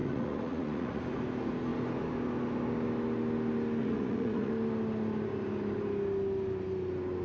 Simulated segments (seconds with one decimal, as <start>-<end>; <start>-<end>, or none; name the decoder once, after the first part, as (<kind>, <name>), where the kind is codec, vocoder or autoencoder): 0.0-1.0 (vocoder, Vocos); 3.8-4.5